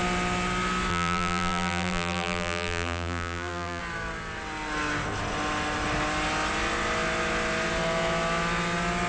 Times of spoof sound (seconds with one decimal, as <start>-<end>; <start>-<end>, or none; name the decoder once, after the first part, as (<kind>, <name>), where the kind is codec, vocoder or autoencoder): 0.9-3.8 (vocoder, BigVGAN v2)